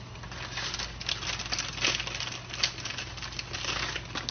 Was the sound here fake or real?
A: real